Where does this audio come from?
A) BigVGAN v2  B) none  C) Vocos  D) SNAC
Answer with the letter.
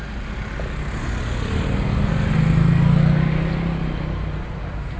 B